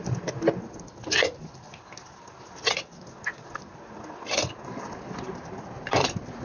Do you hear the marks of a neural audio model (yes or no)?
no